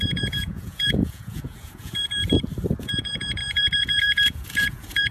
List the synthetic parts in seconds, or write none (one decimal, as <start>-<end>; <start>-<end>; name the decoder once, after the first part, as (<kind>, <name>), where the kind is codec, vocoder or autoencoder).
0.0-2.2 (vocoder, Vocos); 2.8-5.1

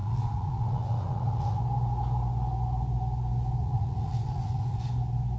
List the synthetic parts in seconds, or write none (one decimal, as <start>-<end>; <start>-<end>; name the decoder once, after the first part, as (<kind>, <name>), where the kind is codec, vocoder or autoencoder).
0.0-1.6 (vocoder, Vocos); 3.6-4.8

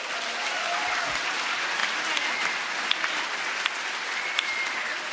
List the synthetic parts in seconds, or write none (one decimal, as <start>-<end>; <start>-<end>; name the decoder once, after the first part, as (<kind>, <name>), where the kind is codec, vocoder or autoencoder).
none

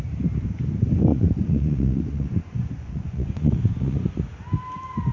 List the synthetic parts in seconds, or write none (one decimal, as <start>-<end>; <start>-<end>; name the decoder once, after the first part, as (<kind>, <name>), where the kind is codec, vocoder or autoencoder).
1.1-4.2 (vocoder, Vocos)

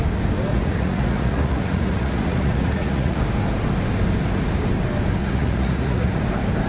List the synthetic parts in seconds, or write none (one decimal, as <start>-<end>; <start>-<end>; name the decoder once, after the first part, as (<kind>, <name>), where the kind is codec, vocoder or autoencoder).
0.5-3.2 (vocoder, Vocos); 5.2-6.2

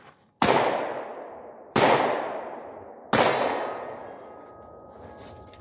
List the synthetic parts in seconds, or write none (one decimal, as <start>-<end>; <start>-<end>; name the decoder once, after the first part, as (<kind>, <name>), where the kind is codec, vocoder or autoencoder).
none

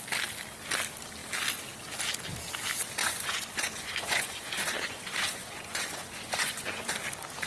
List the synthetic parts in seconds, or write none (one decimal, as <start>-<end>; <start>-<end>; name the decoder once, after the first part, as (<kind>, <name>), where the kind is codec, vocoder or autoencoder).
3.0-6.9 (vocoder, Vocos)